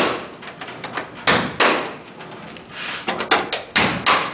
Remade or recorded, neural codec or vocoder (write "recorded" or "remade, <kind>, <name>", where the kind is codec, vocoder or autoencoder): recorded